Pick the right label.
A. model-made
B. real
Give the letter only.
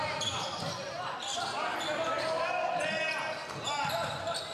B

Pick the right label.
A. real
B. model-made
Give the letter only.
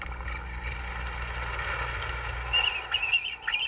A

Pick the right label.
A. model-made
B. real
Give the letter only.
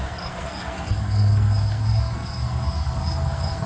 A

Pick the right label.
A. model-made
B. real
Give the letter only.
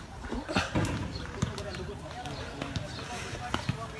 B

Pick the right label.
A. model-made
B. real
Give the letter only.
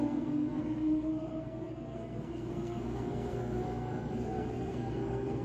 A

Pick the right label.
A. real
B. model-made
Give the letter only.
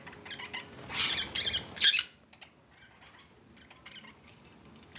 A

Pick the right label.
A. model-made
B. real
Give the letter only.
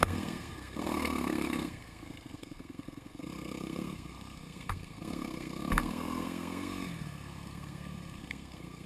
A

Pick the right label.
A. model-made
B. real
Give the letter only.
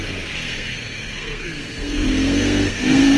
A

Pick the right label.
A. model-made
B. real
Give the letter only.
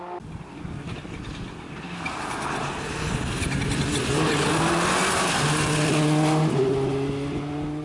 B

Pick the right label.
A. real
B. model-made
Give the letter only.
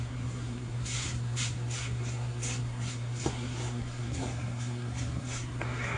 B